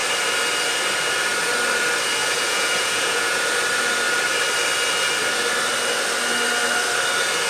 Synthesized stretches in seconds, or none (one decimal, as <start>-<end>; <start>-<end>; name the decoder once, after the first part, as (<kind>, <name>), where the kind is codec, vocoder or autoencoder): 2.2-3.4 (vocoder, Vocos)